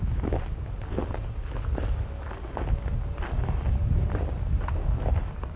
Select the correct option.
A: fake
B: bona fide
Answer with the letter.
B